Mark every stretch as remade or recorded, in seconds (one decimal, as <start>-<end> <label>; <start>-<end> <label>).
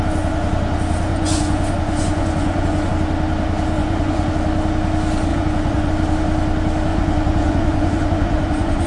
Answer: 0.0-1.1 recorded; 1.1-2.9 remade; 2.9-3.8 recorded; 3.8-4.3 remade; 4.3-5.3 recorded; 5.3-5.9 remade; 5.9-6.9 recorded; 6.9-8.9 remade